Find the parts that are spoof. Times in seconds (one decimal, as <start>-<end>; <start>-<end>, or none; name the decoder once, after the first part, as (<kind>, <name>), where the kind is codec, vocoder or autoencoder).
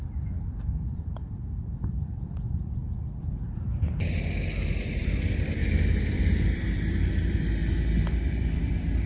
0.0-2.8 (vocoder, BigVGAN v2); 5.0-5.6; 6.2-7.6; 8.1-9.1